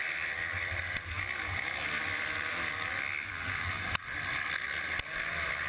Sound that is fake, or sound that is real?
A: real